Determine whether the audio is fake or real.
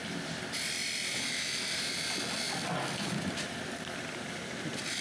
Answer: fake